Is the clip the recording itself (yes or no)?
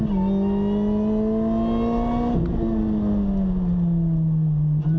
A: yes